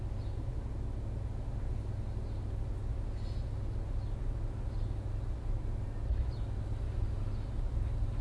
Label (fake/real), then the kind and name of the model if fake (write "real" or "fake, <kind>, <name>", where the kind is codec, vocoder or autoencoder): real